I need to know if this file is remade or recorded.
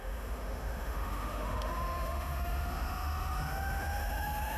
remade